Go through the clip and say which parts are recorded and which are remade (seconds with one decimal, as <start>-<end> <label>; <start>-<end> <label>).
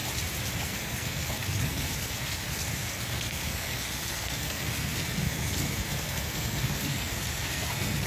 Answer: 0.0-0.6 recorded; 0.6-8.1 remade